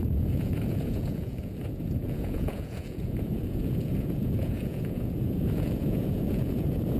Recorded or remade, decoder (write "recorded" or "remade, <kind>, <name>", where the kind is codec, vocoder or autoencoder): remade, vocoder, Vocos